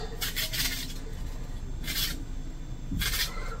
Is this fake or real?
real